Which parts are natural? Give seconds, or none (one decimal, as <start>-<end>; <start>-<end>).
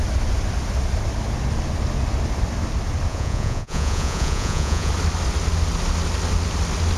0.0-3.1; 4.9-7.0